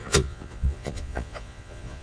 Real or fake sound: fake